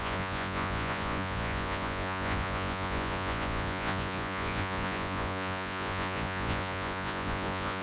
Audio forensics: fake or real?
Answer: fake